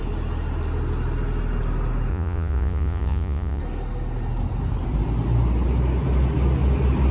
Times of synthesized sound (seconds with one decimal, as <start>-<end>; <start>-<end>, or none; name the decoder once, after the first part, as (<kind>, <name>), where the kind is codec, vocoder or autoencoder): 2.1-3.6 (vocoder, Vocos)